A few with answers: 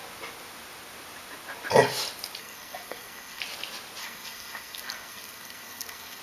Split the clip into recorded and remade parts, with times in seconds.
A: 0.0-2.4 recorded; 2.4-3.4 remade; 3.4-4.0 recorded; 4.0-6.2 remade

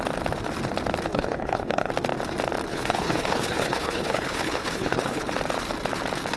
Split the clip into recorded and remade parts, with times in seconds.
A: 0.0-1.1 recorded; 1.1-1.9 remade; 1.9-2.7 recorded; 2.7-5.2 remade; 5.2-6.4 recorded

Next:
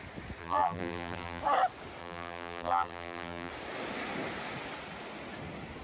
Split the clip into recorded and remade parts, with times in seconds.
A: 0.0-0.4 recorded; 0.4-1.4 remade; 1.4-2.0 recorded; 2.0-3.5 remade; 3.5-5.8 recorded

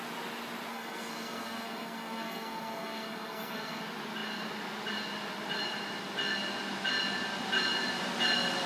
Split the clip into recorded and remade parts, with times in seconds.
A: 0.0-0.7 recorded; 0.7-3.8 remade; 3.8-8.7 recorded

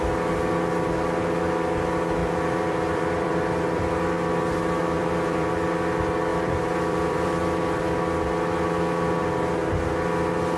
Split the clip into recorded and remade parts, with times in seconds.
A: 0.0-2.2 recorded; 2.2-3.8 remade; 3.8-4.8 recorded; 4.8-5.5 remade; 5.5-6.3 recorded; 6.3-7.8 remade; 7.8-10.6 recorded

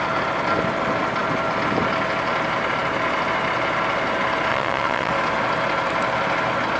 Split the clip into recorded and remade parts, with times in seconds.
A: 0.0-4.5 recorded; 4.5-5.1 remade; 5.1-6.8 recorded